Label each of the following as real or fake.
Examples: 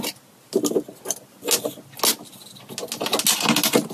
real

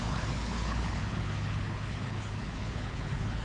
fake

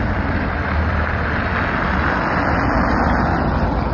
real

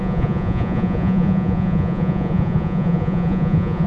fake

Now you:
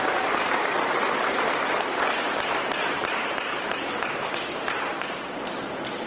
fake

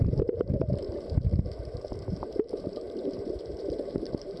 fake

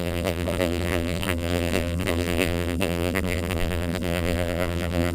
fake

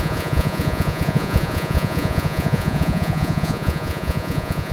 fake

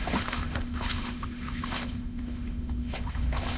fake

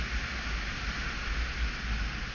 real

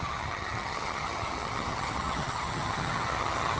fake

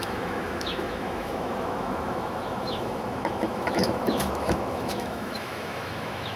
fake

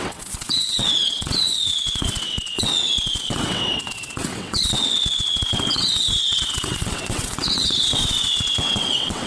fake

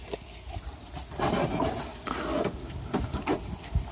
real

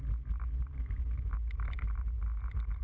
real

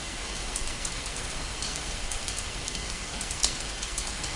fake